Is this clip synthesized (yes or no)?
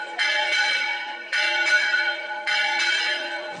yes